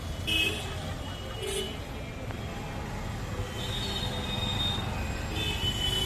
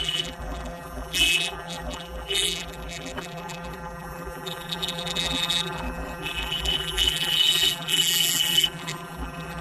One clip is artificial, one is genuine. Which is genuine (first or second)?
first